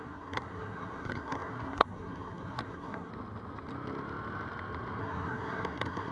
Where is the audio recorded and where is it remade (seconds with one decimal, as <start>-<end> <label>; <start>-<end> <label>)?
0.0-3.1 remade; 3.1-5.0 recorded; 5.0-6.1 remade